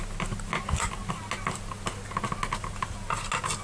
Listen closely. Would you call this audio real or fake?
real